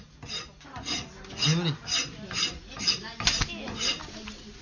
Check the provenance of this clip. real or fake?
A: real